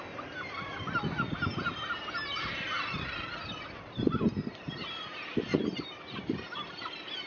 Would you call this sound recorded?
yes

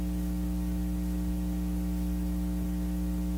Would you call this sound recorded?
yes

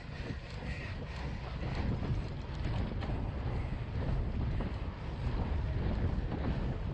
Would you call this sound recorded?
yes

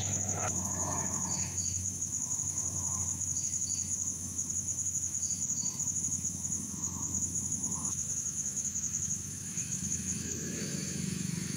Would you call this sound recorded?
no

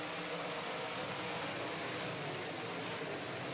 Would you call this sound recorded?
yes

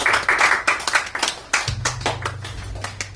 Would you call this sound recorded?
yes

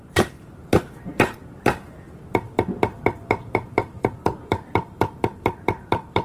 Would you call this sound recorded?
no